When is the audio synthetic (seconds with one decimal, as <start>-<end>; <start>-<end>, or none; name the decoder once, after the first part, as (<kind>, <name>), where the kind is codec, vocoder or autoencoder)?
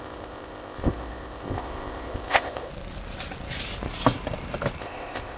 0.0-2.7 (codec, ZipCodec); 4.8-5.4